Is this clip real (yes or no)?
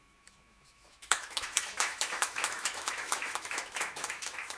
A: no